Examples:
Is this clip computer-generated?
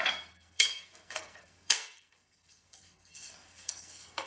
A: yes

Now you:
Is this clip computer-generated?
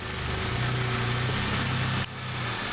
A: no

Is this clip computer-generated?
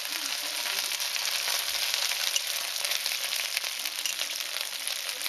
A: no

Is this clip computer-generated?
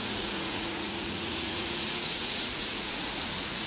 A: yes